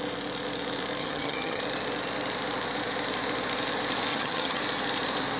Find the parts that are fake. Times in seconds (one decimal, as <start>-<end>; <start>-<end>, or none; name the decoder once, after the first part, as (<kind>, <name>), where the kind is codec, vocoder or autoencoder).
1.0-1.6 (vocoder, HiFi-GAN); 4.1-4.6